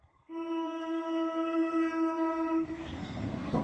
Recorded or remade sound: remade